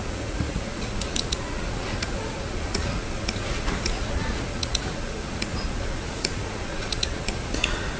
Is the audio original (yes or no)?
no